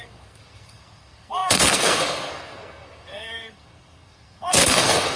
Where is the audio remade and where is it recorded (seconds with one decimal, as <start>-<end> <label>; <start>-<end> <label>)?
0.0-5.2 remade